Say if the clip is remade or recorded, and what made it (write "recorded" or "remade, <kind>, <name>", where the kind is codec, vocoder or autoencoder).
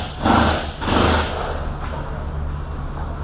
recorded